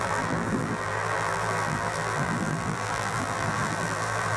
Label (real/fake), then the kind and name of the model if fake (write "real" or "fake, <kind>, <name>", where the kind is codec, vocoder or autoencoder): fake, vocoder, BigVGAN v2